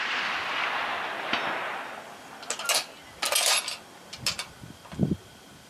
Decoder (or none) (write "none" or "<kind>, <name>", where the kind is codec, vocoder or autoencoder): none